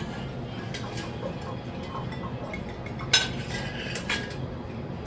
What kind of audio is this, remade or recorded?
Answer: recorded